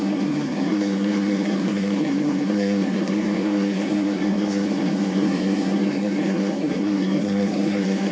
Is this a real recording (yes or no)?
no